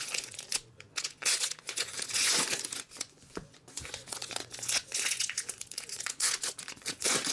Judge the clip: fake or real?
fake